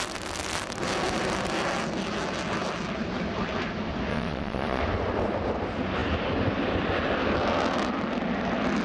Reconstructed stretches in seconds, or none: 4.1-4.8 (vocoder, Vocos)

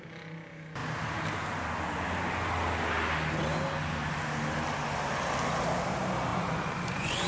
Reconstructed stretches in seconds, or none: 6.3-7.3 (vocoder, Vocos)

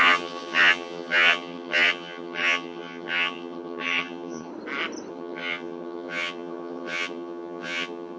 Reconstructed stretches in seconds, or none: 0.0-4.5 (vocoder, HiFi-GAN); 5.1-8.2

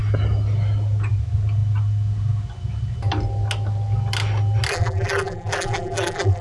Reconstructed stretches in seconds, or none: 4.7-6.4 (vocoder, BigVGAN v2)

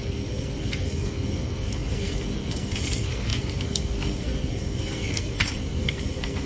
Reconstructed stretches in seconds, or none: 0.0-6.5 (codec, SNAC)